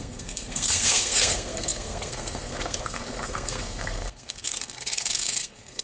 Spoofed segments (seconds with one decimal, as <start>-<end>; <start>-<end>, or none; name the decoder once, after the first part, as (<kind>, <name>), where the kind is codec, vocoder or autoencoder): 0.0-5.8 (codec, SNAC)